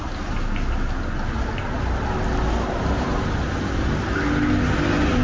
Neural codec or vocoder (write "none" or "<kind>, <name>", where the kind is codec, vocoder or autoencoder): none